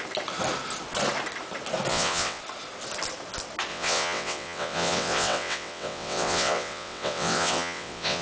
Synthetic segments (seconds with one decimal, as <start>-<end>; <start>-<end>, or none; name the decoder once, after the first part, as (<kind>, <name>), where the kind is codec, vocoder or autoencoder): 1.9-2.4 (vocoder, WaveNeXt); 3.7-8.2